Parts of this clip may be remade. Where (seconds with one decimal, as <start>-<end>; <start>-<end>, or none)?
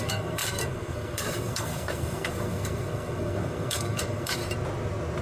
0.0-4.4